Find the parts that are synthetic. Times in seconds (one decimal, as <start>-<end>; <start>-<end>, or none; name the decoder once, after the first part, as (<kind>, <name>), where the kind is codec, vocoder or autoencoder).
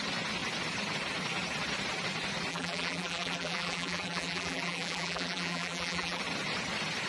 2.5-6.2 (vocoder, BigVGAN v2)